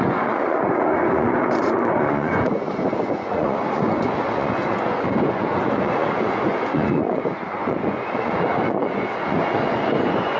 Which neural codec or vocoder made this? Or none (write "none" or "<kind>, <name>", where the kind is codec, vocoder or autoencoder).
vocoder, Vocos